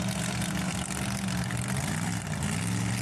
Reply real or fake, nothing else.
real